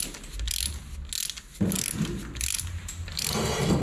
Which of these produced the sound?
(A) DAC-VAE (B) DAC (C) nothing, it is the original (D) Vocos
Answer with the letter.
C